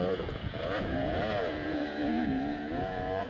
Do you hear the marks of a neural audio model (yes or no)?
yes